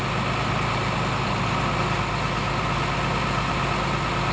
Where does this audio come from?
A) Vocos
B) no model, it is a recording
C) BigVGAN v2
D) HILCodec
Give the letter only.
B